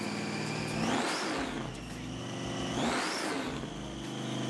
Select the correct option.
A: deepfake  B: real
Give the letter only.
B